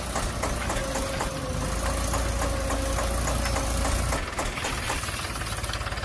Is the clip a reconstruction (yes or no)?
no